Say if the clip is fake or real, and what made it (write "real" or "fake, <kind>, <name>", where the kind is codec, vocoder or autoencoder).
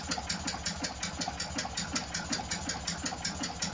real